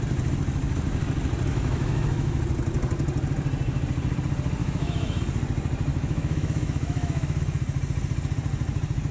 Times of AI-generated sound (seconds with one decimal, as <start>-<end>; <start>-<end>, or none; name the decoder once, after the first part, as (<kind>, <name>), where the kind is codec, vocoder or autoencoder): 1.5-2.4 (autoencoder, DAC-VAE); 4.6-5.2; 5.9-7.4